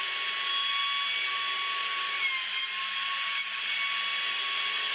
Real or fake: real